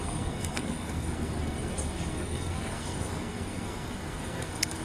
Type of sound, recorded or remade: remade